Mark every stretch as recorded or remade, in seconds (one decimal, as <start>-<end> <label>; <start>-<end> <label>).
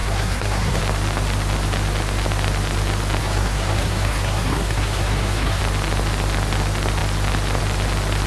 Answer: 0.0-0.8 remade; 0.8-3.2 recorded; 3.2-5.6 remade; 5.6-8.3 recorded